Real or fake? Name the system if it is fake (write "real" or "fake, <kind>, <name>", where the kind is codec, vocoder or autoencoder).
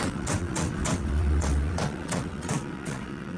fake, vocoder, WaveNeXt